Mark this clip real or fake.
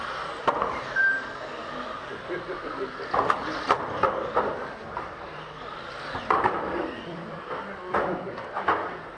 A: real